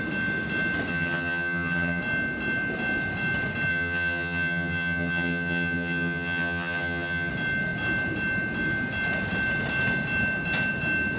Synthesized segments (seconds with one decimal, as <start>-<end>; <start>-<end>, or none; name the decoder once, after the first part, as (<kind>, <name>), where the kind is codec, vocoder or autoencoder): 0.9-2.0 (vocoder, HiFi-GAN); 3.7-7.3